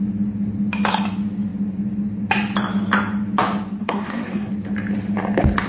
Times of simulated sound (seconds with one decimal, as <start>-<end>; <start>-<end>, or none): 3.8-4.5